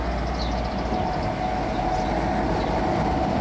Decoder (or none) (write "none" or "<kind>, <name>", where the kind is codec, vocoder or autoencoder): none